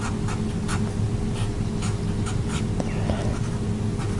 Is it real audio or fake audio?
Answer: real